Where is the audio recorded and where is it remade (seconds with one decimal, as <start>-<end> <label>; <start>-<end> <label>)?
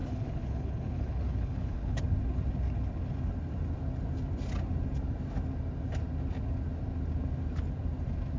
0.0-2.0 remade; 2.0-8.4 recorded